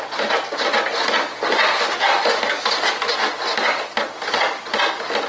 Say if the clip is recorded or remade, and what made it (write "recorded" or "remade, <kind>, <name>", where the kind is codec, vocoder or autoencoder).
recorded